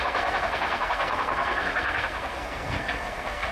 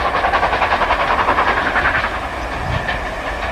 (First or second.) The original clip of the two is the second